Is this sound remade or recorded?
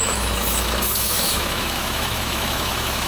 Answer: remade